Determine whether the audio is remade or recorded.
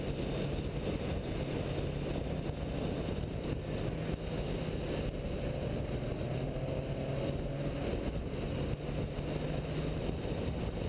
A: recorded